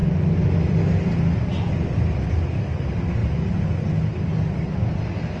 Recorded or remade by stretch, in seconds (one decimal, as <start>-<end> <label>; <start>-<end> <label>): 0.0-5.4 recorded